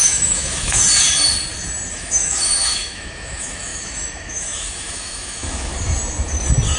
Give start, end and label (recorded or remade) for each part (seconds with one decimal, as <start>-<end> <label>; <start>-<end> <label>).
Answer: 0.0-0.8 remade; 0.8-1.9 recorded; 1.9-5.7 remade; 5.7-6.8 recorded